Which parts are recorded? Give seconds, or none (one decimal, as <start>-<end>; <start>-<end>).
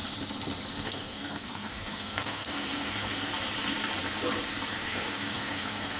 0.0-0.7; 3.3-4.7